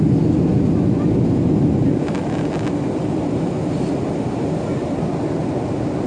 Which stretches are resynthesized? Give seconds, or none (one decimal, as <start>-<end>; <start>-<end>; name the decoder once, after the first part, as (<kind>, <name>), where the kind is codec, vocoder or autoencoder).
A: none